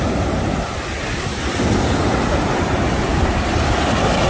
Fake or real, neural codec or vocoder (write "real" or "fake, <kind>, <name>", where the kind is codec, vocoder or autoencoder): real